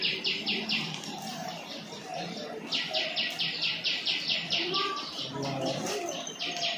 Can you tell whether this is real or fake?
real